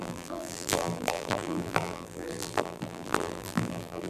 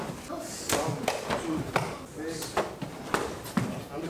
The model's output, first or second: first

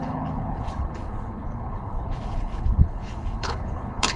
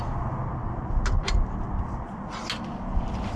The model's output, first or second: first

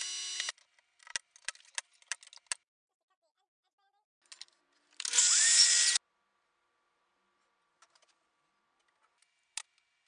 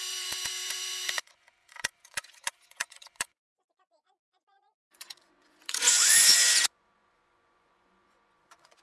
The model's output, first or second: second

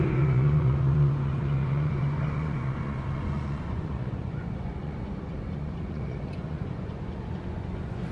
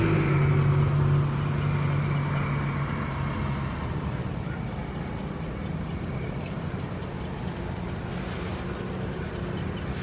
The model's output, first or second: first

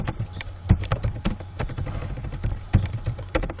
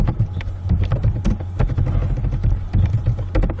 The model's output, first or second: first